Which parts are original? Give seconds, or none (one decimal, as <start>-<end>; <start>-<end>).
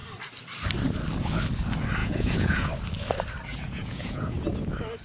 0.0-2.0; 2.7-3.5; 4.4-5.0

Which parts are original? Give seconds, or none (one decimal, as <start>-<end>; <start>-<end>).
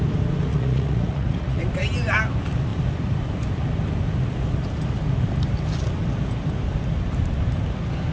0.0-0.5; 1.6-8.1